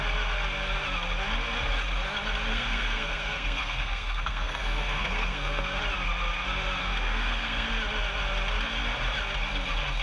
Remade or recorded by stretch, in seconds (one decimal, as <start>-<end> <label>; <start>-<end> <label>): 0.0-2.5 recorded; 2.5-5.8 remade; 5.8-6.8 recorded; 6.8-7.7 remade; 7.7-10.0 recorded